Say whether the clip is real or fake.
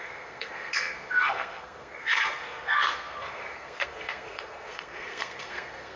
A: fake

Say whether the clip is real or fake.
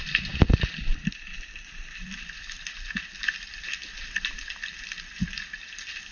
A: fake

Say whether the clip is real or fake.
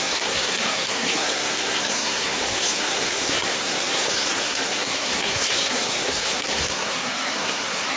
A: fake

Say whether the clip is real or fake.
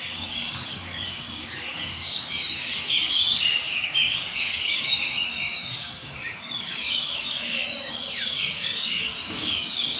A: fake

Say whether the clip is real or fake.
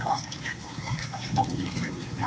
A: fake